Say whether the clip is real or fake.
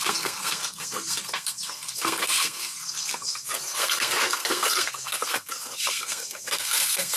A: fake